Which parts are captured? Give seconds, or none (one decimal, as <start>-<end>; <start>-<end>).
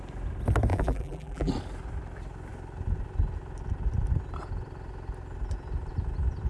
0.0-0.7; 1.5-6.5